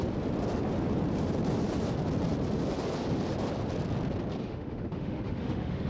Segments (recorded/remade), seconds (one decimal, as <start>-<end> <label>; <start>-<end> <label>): 0.0-4.4 recorded; 4.4-5.9 remade